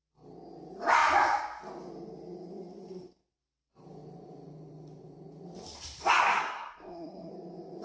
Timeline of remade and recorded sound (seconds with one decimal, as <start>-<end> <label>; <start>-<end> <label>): 0.0-6.2 recorded; 6.2-7.3 remade; 7.3-7.8 recorded